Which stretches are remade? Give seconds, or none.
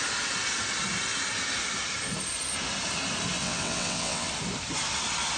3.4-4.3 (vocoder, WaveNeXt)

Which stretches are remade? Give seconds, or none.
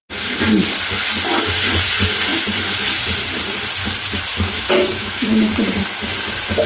4.3-5.7 (autoencoder, DAC-VAE)